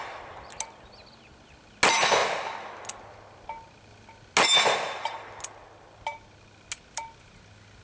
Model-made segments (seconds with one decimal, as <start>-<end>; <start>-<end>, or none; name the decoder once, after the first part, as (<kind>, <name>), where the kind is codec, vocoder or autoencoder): none